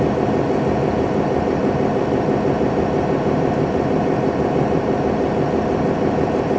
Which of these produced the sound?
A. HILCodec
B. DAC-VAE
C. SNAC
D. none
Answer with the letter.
D